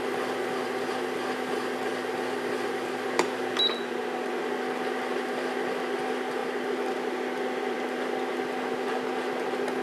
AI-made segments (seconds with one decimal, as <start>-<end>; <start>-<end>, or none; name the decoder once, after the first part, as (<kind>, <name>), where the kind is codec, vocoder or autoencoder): 6.4-8.3 (vocoder, BigVGAN v2)